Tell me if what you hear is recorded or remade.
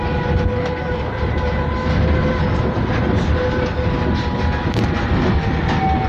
recorded